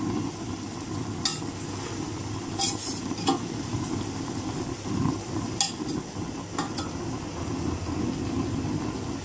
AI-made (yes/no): no